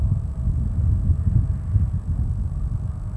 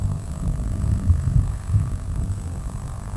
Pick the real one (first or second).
first